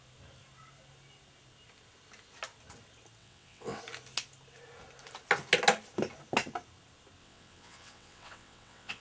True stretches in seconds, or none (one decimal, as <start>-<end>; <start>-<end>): 0.0-3.2; 3.8-7.2